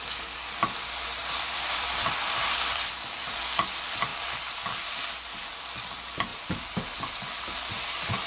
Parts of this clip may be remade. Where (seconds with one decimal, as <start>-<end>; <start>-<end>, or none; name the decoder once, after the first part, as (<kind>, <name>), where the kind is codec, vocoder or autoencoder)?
1.2-3.2 (vocoder, BigVGAN v2); 4.1-5.3; 6.3-7.5

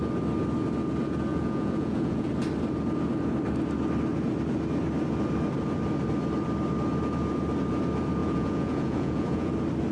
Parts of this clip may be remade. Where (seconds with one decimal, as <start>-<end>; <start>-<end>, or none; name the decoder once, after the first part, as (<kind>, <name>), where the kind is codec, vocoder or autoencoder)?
1.3-2.3 (vocoder, Vocos); 8.2-9.5